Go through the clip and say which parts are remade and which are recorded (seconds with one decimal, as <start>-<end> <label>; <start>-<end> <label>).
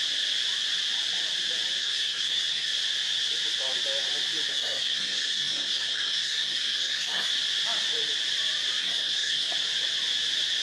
0.0-1.8 recorded; 1.8-2.7 remade; 2.7-4.5 recorded; 4.5-7.3 remade; 7.3-8.8 recorded; 8.8-9.5 remade; 9.5-10.6 recorded